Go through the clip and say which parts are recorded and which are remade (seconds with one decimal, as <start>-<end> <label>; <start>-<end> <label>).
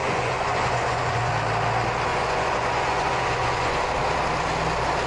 0.0-1.3 remade; 1.3-2.1 recorded; 2.1-3.9 remade; 3.9-5.1 recorded